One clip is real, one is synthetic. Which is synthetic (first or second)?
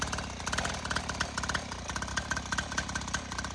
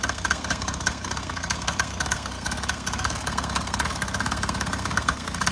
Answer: second